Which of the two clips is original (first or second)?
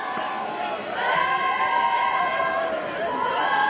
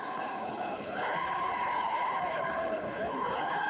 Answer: first